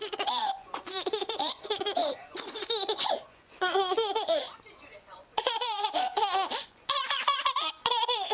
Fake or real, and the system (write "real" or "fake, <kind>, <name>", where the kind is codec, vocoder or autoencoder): fake, vocoder, Vocos